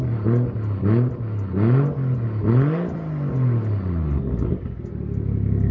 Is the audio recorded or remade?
recorded